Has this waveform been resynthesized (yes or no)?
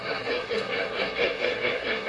yes